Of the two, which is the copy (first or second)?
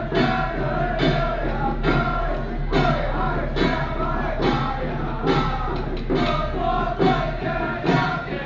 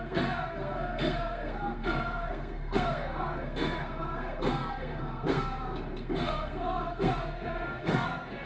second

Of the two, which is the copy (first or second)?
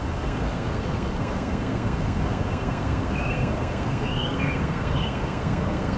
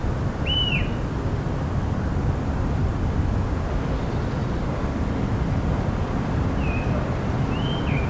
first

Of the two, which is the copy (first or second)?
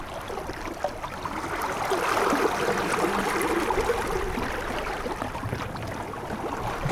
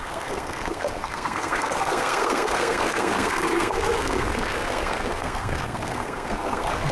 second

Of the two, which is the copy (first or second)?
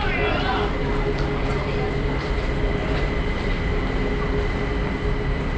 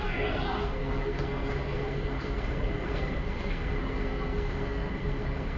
second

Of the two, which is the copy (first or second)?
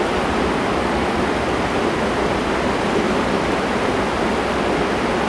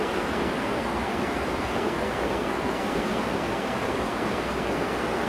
second